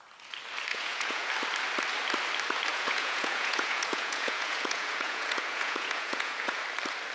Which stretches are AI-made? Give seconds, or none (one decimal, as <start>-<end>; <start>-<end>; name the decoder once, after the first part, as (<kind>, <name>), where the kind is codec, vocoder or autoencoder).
0.7-1.3 (vocoder, Vocos); 2.7-6.6

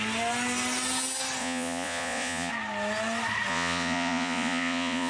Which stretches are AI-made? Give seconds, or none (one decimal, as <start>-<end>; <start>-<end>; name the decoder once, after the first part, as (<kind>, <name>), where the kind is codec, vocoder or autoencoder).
1.4-2.5 (vocoder, Vocos); 3.5-5.1

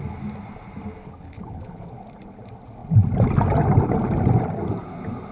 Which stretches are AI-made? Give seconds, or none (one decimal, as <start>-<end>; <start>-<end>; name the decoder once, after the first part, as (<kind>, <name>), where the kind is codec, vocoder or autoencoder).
1.0-1.9 (codec, HILCodec)

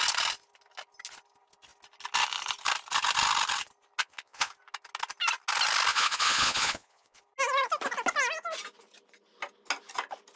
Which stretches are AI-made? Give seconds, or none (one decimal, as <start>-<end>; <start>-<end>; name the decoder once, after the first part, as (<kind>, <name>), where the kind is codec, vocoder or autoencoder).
4.0-4.5 (vocoder, Vocos); 5.9-7.2

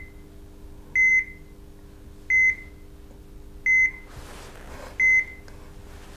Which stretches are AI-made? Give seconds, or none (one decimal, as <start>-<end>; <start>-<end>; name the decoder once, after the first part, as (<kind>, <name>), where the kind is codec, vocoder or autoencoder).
none

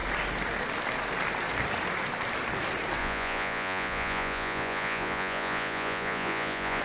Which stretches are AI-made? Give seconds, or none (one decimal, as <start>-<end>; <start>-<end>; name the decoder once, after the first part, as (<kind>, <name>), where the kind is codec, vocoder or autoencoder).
3.0-6.8 (vocoder, Vocos)